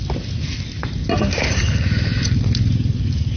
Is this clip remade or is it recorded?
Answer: recorded